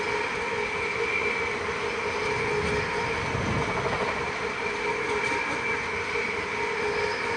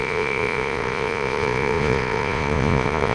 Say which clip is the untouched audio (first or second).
first